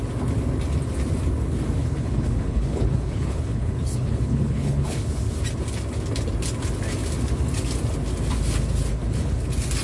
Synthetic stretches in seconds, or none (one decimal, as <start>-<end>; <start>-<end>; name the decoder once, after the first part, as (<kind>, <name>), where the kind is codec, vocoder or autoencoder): 1.8-5.1 (codec, HILCodec); 8.9-9.4